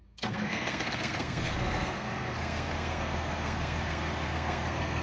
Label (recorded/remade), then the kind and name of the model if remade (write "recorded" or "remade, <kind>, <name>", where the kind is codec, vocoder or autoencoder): remade, codec, SNAC